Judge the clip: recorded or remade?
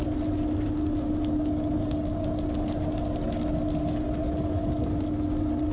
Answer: recorded